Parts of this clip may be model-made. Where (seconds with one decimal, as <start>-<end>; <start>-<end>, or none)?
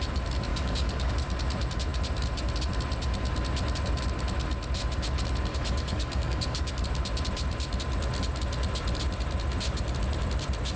0.5-1.1; 5.5-6.7